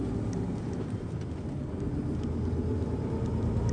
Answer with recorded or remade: recorded